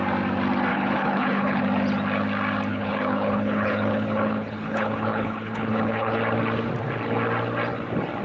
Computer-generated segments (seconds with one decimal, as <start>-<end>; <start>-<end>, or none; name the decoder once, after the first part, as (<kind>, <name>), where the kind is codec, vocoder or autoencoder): 0.7-1.6 (codec, HILCodec); 2.7-6.2